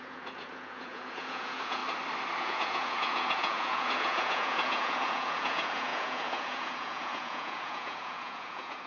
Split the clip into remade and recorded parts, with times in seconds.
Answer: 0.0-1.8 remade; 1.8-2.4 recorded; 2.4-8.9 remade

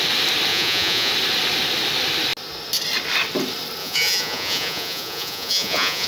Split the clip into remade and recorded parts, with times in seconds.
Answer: 0.0-0.5 recorded; 0.5-1.1 remade; 1.1-3.8 recorded; 3.8-6.1 remade

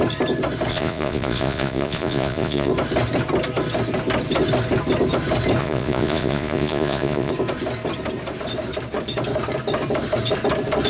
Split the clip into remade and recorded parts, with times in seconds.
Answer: 0.0-0.7 recorded; 0.7-2.7 remade; 2.7-5.6 recorded; 5.6-7.3 remade; 7.3-10.9 recorded

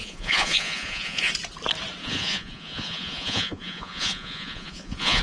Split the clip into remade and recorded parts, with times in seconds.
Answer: 0.0-1.3 remade; 1.3-2.0 recorded; 2.0-5.2 remade

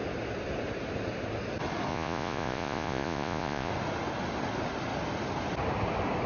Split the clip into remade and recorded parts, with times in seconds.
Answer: 0.0-1.9 recorded; 1.9-3.7 remade; 3.7-6.3 recorded

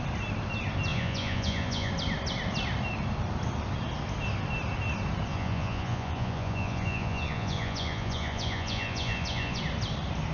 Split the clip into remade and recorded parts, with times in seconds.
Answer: 0.0-0.9 recorded; 0.9-1.9 remade; 1.9-5.3 recorded; 5.3-9.6 remade; 9.6-10.3 recorded